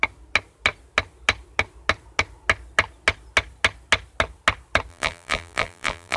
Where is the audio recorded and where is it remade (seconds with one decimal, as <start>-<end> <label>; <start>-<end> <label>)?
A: 0.0-4.9 recorded; 4.9-6.2 remade